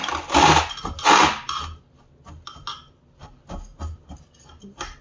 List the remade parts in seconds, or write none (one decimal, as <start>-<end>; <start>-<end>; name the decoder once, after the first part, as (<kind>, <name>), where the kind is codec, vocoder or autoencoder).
none